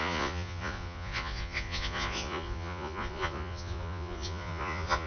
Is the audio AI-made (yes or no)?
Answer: yes